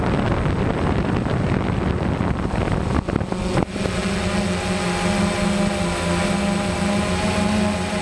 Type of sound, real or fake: real